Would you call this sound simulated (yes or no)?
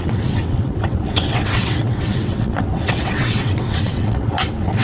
yes